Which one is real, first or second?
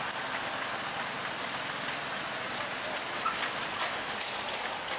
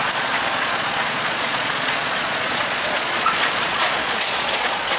first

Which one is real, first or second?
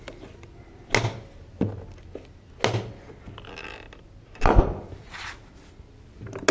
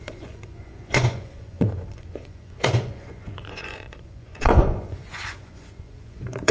first